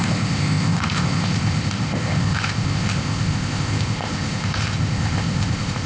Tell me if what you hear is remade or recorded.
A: remade